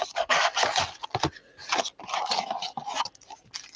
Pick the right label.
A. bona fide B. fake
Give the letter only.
A